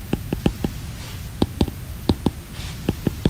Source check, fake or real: real